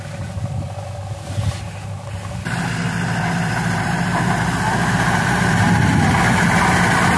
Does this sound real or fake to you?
real